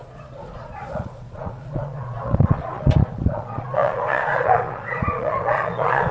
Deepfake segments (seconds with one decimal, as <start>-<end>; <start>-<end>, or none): 0.0-6.1